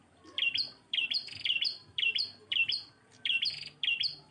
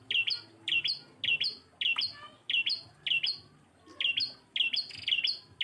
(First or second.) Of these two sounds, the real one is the second